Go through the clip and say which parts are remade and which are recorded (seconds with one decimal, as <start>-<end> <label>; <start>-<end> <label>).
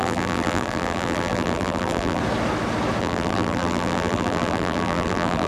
0.0-2.2 remade; 2.2-3.0 recorded; 3.0-5.5 remade